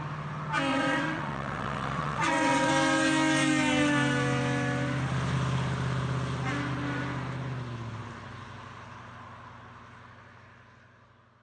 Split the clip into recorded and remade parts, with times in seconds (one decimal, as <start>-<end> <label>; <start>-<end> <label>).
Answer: 0.0-0.7 recorded; 0.7-2.7 remade; 2.7-11.4 recorded